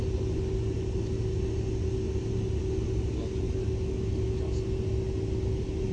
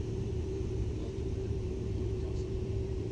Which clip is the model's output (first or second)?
second